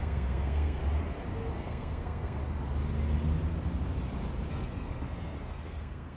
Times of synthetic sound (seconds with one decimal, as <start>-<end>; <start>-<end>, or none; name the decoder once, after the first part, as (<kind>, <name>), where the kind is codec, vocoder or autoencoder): 0.0-0.8 (codec, SNAC); 1.6-2.4; 4.5-6.2